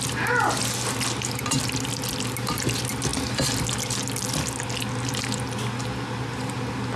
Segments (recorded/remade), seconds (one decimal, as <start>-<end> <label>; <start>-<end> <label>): 0.0-7.0 recorded